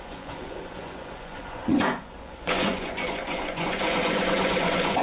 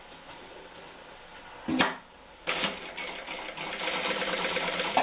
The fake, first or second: first